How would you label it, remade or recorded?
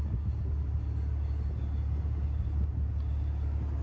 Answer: recorded